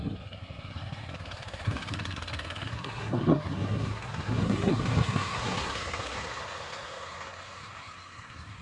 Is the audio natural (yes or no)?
no